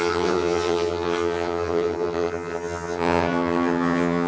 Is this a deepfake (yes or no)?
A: yes